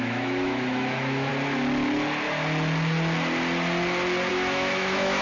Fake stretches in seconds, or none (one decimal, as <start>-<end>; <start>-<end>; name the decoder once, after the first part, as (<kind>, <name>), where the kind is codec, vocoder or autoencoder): 0.0-1.3 (autoencoder, DAC-VAE); 4.3-5.2